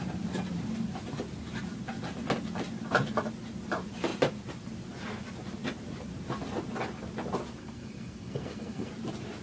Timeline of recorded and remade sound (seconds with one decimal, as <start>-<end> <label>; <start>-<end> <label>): 0.0-7.6 recorded; 7.6-8.9 remade; 8.9-9.4 recorded